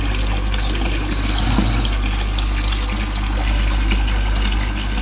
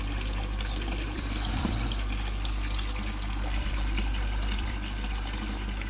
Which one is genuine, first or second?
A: first